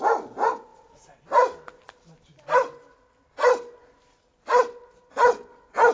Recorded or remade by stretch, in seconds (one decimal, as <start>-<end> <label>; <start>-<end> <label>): 0.0-5.9 recorded